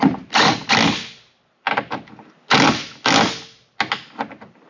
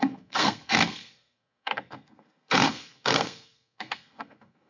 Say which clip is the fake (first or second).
second